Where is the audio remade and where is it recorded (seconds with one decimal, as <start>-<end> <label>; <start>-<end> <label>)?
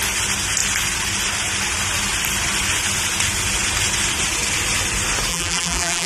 0.0-5.3 recorded; 5.3-6.1 remade